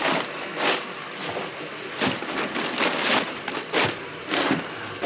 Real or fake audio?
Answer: real